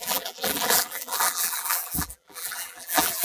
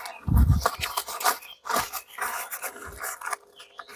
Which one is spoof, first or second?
first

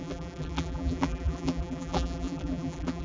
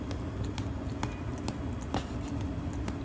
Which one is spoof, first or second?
first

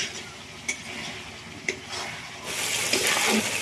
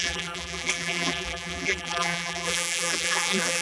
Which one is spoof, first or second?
second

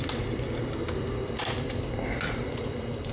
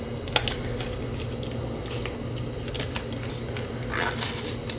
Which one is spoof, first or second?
first